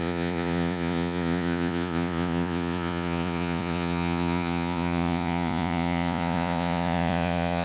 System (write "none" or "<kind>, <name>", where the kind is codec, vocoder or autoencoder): vocoder, Vocos